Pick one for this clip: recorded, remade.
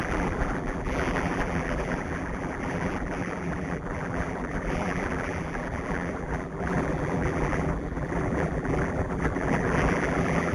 remade